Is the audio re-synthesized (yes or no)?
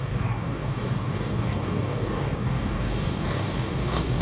yes